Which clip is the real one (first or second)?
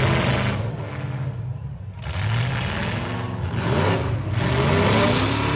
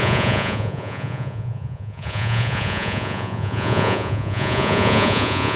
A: first